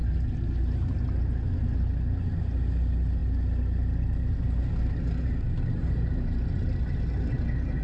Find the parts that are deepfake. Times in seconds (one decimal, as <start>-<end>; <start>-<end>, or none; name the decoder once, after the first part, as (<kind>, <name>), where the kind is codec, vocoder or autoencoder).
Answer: none